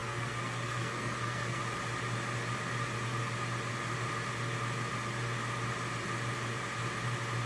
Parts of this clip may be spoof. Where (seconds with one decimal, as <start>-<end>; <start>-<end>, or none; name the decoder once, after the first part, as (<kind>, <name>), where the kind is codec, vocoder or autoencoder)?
0.0-1.6 (codec, SNAC)